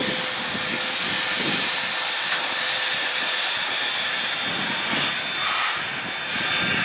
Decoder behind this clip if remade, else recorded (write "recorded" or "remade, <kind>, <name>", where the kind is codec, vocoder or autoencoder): recorded